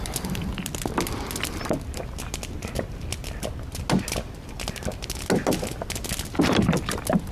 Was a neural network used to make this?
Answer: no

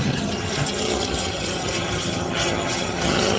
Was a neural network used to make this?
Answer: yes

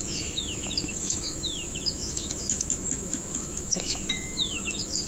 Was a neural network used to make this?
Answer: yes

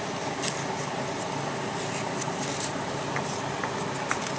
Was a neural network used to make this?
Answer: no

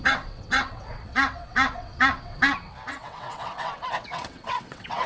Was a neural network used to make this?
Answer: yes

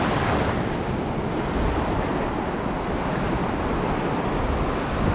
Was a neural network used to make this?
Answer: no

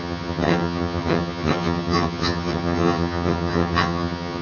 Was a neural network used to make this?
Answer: yes